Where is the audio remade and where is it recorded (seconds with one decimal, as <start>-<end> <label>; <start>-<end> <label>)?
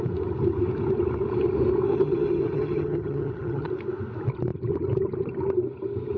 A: 0.0-1.9 recorded; 1.9-3.7 remade; 3.7-6.2 recorded